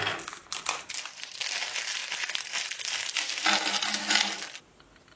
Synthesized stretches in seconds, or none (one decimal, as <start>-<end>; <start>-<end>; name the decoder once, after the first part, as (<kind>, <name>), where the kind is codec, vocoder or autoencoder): 0.0-2.0 (vocoder, BigVGAN v2)